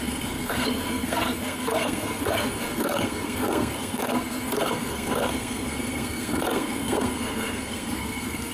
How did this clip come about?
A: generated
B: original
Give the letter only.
A